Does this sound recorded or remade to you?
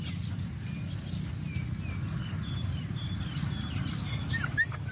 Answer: recorded